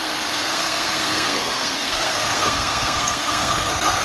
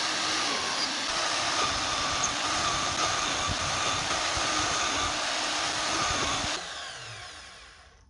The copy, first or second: first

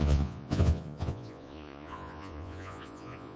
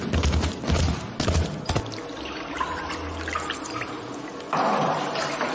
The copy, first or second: first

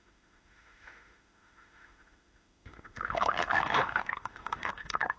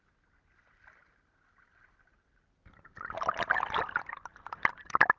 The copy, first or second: first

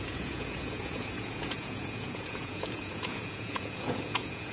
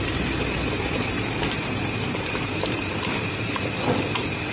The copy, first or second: first